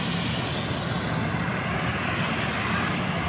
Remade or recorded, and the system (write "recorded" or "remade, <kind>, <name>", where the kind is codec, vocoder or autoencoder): recorded